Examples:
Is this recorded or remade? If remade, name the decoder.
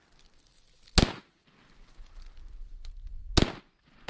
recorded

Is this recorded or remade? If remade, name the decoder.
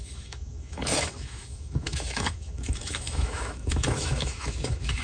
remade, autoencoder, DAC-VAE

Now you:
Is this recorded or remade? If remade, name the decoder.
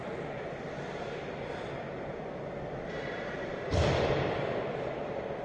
remade, vocoder, BigVGAN v2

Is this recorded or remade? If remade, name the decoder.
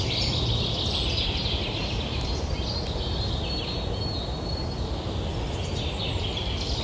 recorded